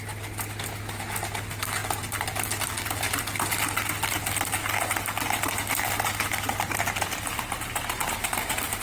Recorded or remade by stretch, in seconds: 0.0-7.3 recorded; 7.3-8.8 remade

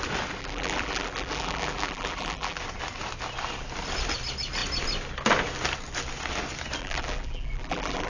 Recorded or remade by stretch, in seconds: 0.0-0.4 recorded; 0.4-2.6 remade; 2.6-6.8 recorded; 6.8-8.1 remade

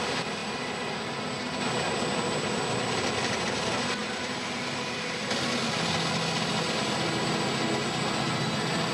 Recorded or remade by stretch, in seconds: 0.0-8.9 recorded

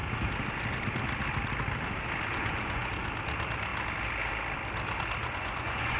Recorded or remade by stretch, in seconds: 0.0-2.3 recorded; 2.3-2.9 remade; 2.9-5.2 recorded; 5.2-6.0 remade

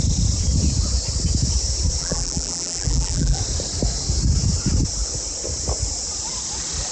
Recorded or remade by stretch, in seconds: 0.0-2.0 recorded; 2.0-3.4 remade; 3.4-6.9 recorded